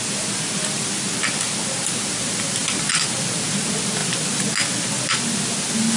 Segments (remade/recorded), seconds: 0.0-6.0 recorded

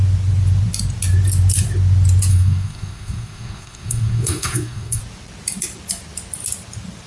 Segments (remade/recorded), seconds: 0.0-2.3 recorded; 2.3-5.0 remade; 5.0-7.1 recorded

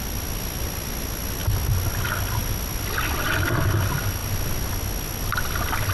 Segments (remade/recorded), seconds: 0.0-5.9 recorded

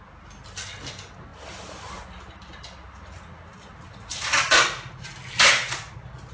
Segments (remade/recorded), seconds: 0.0-6.3 recorded

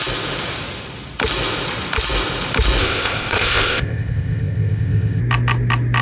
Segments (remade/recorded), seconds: 0.0-2.8 recorded; 2.8-5.2 remade; 5.2-6.0 recorded